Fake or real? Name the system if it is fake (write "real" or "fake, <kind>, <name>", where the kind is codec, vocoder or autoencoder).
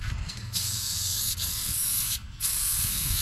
fake, codec, SNAC